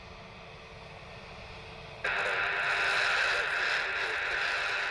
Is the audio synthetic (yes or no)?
no